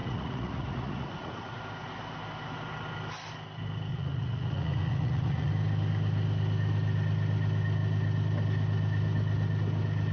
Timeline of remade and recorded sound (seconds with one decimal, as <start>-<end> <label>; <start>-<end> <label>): 0.0-1.6 remade; 1.6-3.9 recorded; 3.9-5.5 remade; 5.5-10.1 recorded